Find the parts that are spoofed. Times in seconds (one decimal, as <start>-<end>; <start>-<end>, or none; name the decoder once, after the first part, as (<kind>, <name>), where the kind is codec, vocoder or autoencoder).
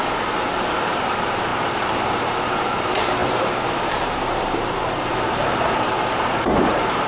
0.9-7.1 (vocoder, BigVGAN v2)